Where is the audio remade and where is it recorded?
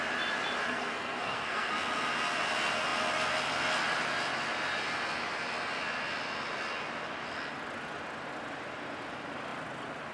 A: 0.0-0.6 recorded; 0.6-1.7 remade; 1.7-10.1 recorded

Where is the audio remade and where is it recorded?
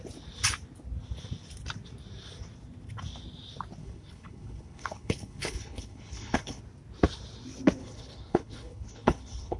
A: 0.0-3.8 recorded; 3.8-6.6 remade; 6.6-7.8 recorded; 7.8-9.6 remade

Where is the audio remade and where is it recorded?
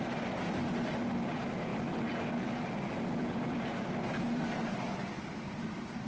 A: 0.0-6.1 recorded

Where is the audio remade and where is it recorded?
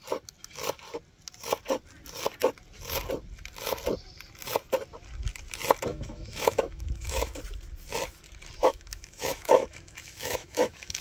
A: 0.0-5.9 recorded; 5.9-7.4 remade; 7.4-8.6 recorded; 8.6-11.0 remade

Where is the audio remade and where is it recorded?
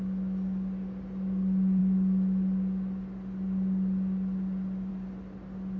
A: 0.0-5.8 recorded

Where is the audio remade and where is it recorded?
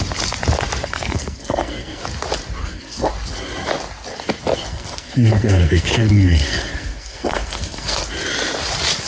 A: 0.0-0.8 recorded; 0.8-2.0 remade; 2.0-2.6 recorded; 2.6-3.1 remade; 3.1-4.7 recorded; 4.7-8.0 remade; 8.0-9.1 recorded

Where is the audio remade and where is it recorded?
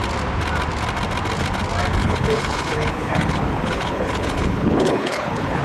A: 0.0-2.0 recorded; 2.0-5.6 remade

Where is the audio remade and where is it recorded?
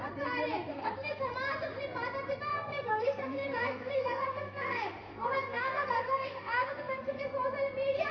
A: 0.0-0.7 recorded; 0.7-1.3 remade; 1.3-2.5 recorded; 2.5-7.2 remade; 7.2-8.1 recorded